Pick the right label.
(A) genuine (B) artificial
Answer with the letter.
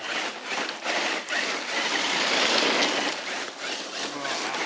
A